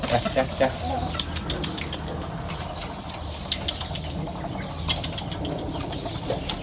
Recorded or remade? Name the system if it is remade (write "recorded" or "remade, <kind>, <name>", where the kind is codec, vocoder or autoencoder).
recorded